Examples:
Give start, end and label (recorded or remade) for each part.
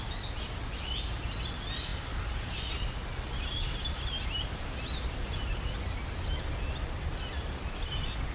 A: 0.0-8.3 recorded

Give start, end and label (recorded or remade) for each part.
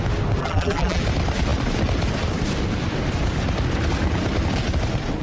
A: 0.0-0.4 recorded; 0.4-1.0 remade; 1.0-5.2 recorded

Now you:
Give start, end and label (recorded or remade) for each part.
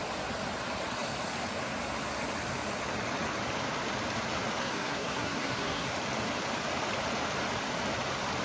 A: 0.0-4.6 recorded; 4.6-5.9 remade; 5.9-8.4 recorded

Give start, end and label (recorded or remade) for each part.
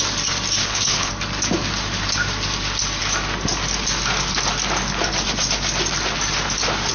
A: 0.0-0.6 recorded; 0.6-1.1 remade; 1.1-6.9 recorded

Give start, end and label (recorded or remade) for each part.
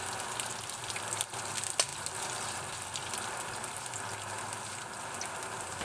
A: 0.0-5.8 recorded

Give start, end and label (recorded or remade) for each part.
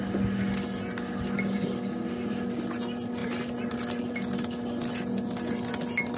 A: 0.0-6.2 recorded